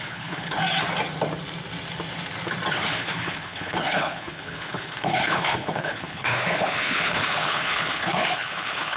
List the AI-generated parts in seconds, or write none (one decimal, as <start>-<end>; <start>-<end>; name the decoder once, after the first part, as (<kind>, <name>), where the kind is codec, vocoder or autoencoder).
0.0-0.6 (codec, HILCodec); 2.7-9.0